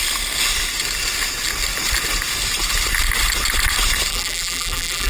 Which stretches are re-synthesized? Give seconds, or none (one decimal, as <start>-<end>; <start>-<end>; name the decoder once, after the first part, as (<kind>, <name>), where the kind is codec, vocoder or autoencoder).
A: 4.1-5.1 (vocoder, BigVGAN v2)